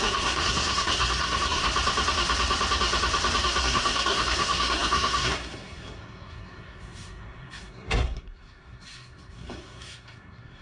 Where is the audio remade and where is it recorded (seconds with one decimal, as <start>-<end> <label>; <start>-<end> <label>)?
0.0-1.7 remade; 1.7-3.6 recorded; 3.6-10.6 remade